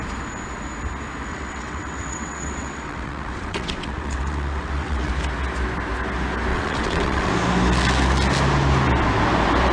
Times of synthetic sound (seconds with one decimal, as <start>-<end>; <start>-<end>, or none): 1.3-5.1; 6.5-7.3